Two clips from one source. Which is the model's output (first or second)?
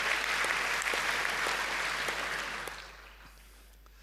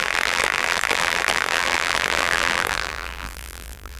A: second